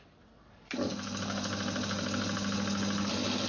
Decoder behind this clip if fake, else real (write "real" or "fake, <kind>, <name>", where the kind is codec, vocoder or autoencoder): real